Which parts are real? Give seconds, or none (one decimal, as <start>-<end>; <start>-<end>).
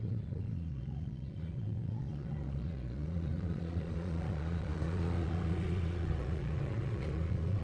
none